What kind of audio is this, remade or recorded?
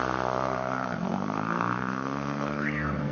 remade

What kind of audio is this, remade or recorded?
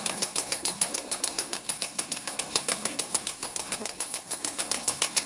remade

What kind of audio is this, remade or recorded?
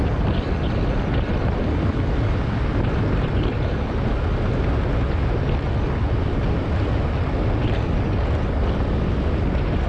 recorded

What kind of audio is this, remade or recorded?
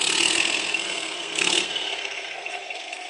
remade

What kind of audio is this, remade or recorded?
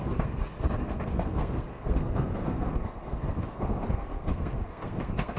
remade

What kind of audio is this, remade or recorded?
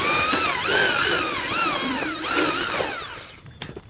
recorded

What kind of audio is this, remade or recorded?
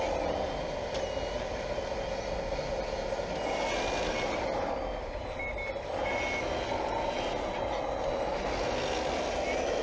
recorded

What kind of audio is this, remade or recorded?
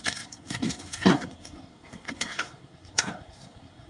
remade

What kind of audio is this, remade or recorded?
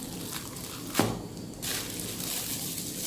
recorded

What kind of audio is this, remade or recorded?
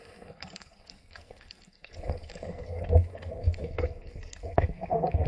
remade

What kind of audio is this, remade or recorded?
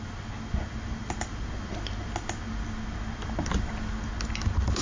recorded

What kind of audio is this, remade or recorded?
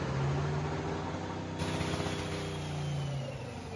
recorded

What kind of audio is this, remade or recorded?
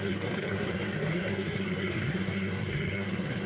remade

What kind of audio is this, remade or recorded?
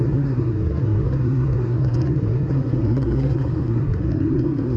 remade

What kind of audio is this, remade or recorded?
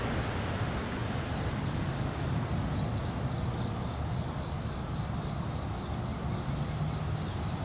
recorded